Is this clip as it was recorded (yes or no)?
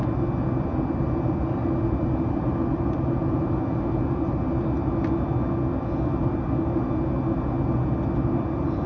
yes